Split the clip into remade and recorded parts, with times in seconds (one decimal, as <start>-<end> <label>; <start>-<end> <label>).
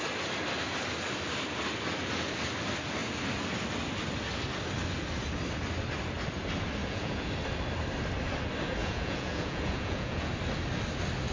0.0-6.8 recorded; 6.8-7.3 remade; 7.3-8.8 recorded; 8.8-10.3 remade; 10.3-11.3 recorded